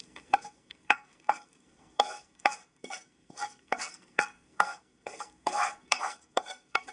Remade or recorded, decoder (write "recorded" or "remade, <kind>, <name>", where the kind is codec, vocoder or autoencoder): remade, codec, SNAC